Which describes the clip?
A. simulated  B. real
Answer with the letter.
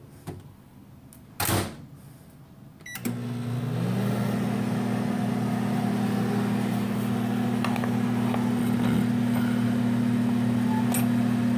B